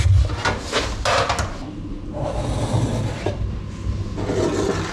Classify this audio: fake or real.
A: real